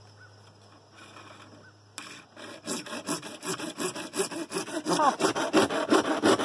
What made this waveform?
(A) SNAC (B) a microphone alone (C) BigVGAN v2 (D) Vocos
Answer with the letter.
B